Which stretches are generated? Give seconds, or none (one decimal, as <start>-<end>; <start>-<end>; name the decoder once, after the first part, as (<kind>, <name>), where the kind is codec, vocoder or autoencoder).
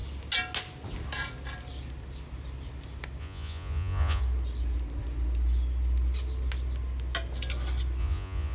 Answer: 3.2-4.2 (vocoder, Vocos); 8.0-8.5